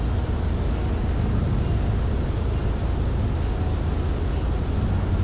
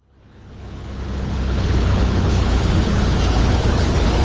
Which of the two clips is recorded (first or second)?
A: first